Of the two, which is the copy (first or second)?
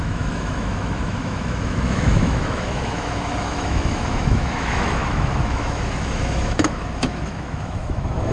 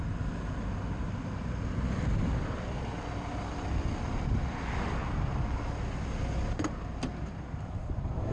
first